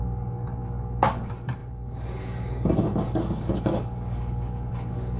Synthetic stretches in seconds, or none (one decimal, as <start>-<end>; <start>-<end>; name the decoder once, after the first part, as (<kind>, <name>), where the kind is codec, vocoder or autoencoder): 0.0-5.2 (codec, DAC)